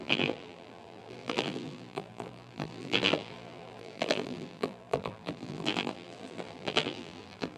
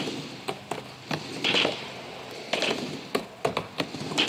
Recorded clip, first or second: second